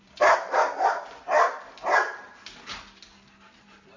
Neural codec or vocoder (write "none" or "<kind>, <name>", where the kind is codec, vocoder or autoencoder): none